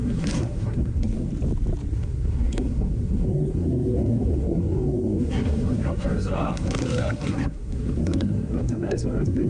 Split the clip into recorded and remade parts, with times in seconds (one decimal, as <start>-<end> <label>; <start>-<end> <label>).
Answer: 0.0-1.3 remade; 1.3-1.9 recorded; 1.9-9.5 remade